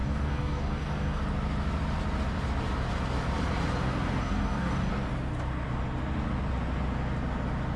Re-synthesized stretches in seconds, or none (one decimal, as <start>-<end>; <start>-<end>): 0.0-1.2; 4.2-4.9